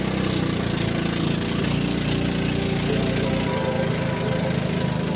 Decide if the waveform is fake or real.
real